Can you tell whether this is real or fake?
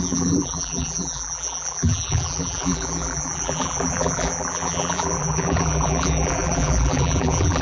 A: fake